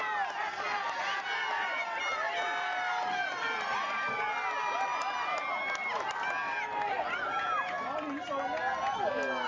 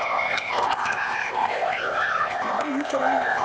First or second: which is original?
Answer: first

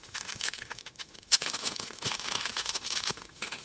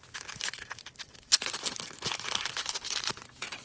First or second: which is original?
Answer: second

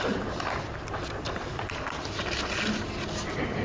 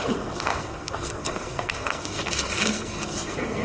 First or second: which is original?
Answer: first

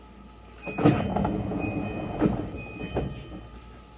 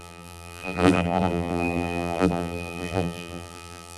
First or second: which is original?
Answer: first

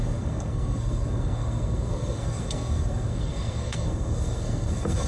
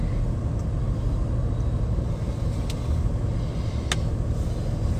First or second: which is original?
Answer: second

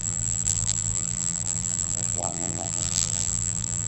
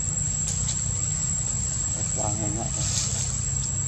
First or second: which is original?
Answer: second